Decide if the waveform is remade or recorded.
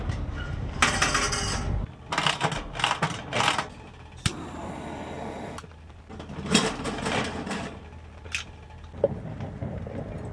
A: recorded